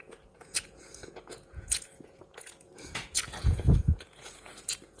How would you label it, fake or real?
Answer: fake